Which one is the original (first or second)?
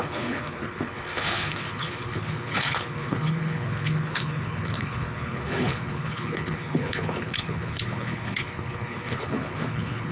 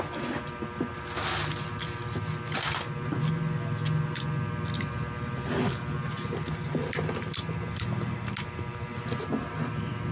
second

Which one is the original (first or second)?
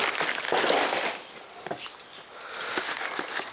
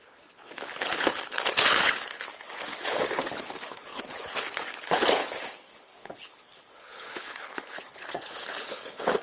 first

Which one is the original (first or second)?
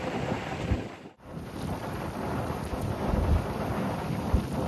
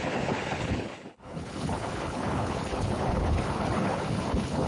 first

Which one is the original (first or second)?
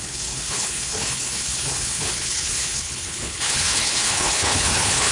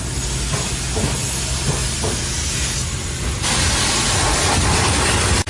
second